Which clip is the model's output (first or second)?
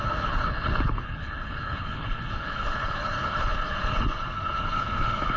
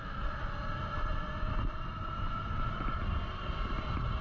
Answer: first